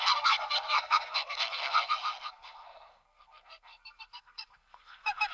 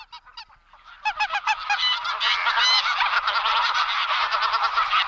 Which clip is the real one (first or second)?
second